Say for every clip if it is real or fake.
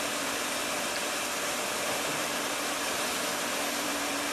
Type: fake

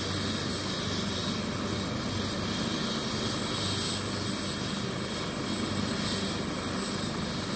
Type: real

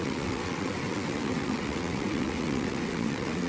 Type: fake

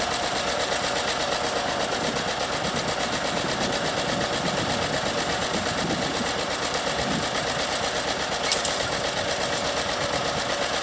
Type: real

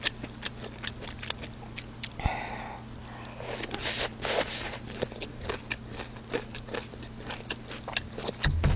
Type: real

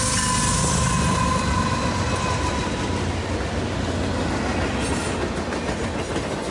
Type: real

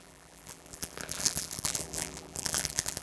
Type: fake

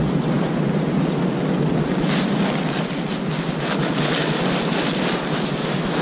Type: real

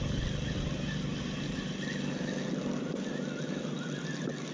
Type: real